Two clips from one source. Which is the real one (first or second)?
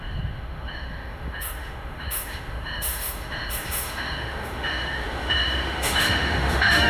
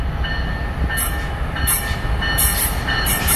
second